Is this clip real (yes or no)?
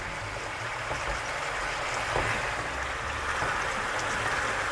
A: yes